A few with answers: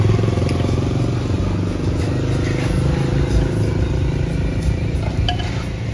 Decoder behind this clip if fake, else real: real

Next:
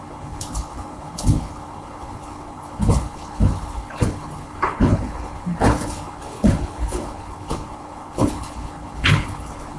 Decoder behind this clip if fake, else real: fake, codec, HILCodec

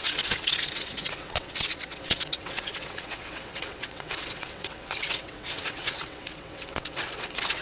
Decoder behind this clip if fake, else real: fake, vocoder, WaveNeXt